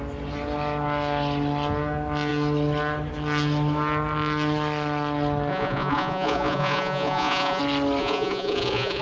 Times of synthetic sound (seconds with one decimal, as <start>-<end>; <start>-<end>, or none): 5.5-7.6; 8.0-9.0